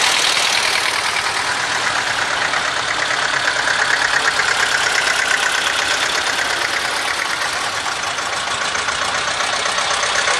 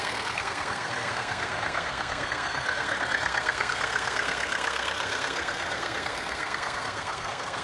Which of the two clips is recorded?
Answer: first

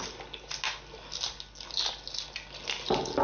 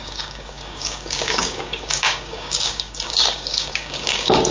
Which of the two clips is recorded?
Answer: first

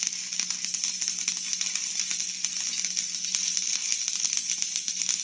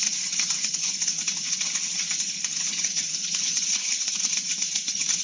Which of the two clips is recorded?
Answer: first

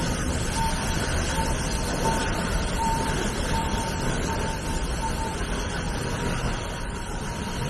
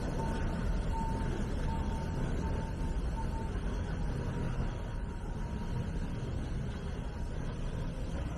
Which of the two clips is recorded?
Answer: second